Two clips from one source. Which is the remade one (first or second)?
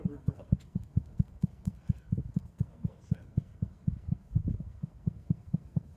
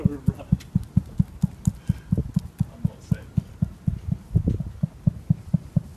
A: first